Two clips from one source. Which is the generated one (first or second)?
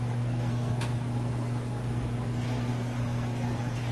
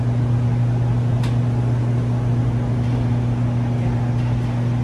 first